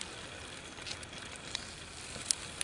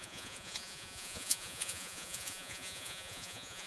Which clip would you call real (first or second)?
first